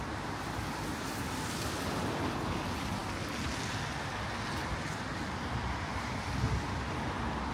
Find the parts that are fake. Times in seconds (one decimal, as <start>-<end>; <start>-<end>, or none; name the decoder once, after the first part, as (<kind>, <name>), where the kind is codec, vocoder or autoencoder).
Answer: none